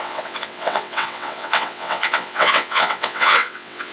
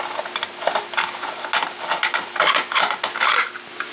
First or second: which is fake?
first